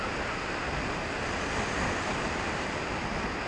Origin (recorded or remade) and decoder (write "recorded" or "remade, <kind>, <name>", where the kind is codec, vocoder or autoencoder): recorded